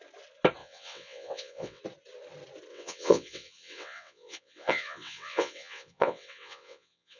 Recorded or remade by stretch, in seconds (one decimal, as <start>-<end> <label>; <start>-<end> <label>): 0.0-0.6 recorded; 0.6-1.8 remade; 1.8-2.7 recorded; 2.7-7.2 remade